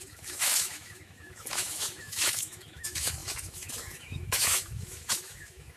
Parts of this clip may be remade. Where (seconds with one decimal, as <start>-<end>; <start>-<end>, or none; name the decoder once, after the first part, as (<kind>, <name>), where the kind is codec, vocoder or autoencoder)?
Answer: 0.0-5.8 (autoencoder, DAC-VAE)